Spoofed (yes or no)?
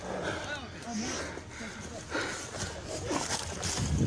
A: no